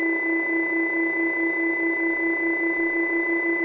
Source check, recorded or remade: recorded